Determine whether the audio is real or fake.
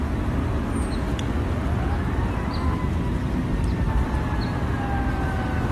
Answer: real